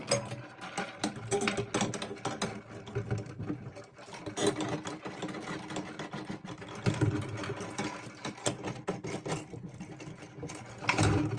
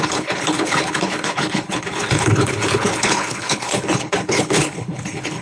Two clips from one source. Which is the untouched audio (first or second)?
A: first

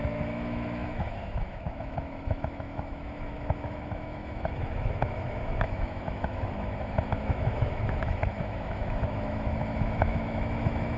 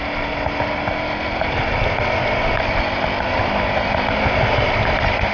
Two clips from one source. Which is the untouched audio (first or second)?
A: second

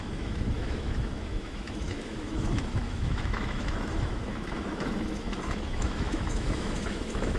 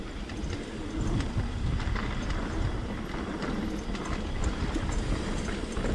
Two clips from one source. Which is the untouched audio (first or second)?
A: second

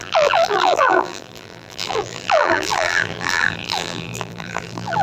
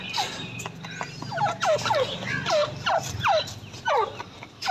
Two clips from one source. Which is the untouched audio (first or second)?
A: second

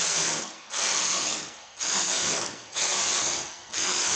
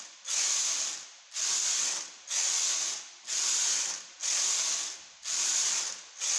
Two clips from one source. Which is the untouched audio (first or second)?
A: second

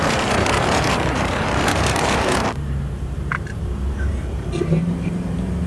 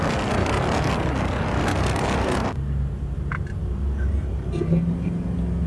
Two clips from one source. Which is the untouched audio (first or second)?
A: second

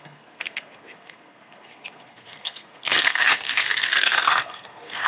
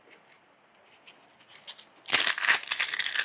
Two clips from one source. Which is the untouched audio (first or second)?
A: second